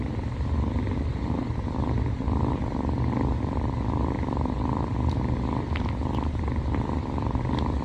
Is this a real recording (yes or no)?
yes